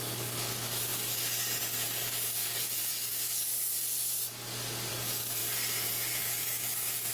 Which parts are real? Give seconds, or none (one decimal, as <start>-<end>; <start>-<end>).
3.5-4.9; 5.4-6.2